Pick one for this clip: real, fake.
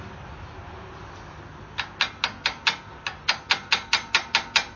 real